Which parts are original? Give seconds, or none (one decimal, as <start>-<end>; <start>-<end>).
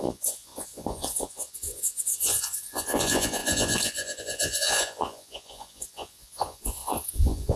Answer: none